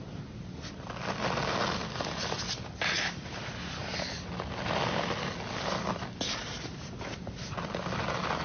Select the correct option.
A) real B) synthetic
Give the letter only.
A